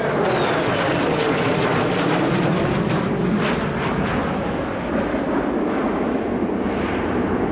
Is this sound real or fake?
real